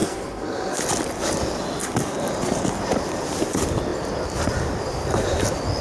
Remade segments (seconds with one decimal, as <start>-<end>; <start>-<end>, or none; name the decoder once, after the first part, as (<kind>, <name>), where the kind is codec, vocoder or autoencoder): 0.0-0.8 (codec, SNAC)